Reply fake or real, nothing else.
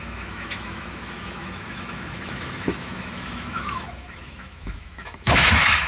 fake